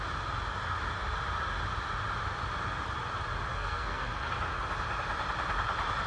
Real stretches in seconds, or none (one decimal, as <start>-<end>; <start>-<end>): 0.0-3.5; 4.3-6.1